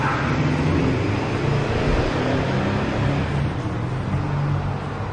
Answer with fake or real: real